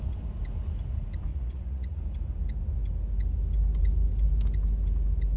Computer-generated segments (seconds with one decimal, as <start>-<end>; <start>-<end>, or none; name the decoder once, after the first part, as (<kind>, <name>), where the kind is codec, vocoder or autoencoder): 1.3-2.0 (vocoder, Vocos)